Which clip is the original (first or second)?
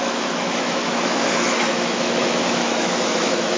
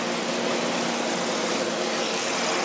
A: second